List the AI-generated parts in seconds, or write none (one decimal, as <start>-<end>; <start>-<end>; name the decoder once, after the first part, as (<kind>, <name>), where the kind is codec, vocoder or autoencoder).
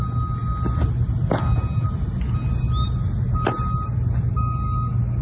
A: none